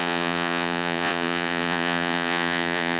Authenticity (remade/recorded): remade